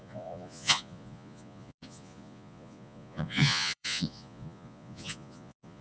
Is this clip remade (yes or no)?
yes